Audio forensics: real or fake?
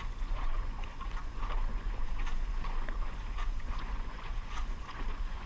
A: fake